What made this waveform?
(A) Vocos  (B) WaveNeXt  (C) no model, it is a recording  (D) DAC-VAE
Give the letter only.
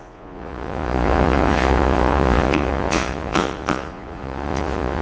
A